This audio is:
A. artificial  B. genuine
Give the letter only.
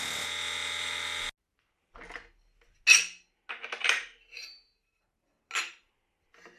B